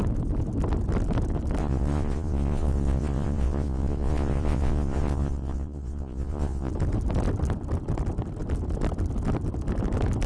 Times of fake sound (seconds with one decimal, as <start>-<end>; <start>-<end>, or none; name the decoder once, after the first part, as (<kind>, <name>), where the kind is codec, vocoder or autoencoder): 1.6-6.7 (vocoder, Vocos)